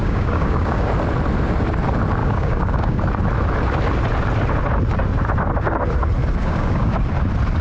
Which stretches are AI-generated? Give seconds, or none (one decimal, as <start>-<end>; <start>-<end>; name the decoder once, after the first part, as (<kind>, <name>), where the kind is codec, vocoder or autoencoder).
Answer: 0.0-0.9 (codec, DAC); 2.2-3.0; 6.4-7.0